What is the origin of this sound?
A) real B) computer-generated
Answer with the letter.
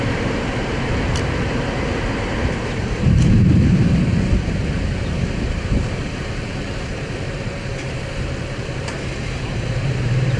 B